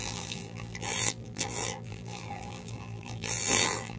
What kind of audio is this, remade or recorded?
remade